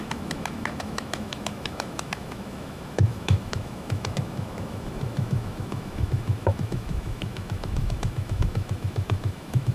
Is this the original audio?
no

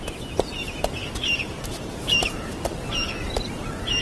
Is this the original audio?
yes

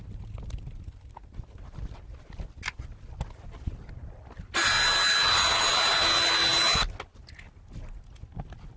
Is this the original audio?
yes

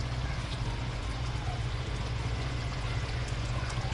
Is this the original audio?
no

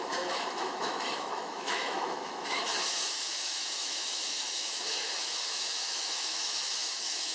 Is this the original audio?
no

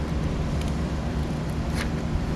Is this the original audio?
no